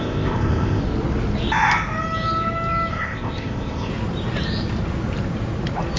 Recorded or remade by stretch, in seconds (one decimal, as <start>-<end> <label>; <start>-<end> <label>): 0.0-0.8 remade; 0.8-2.9 recorded; 2.9-3.9 remade; 3.9-6.0 recorded